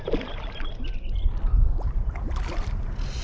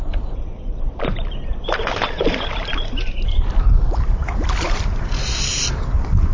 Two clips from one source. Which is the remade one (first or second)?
second